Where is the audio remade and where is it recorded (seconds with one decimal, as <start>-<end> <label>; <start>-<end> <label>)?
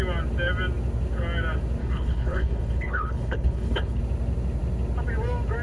0.0-1.8 recorded; 1.8-4.0 remade; 4.0-5.6 recorded